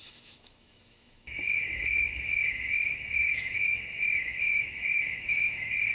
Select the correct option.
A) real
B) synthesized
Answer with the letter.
B